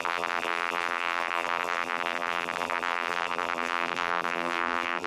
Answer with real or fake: fake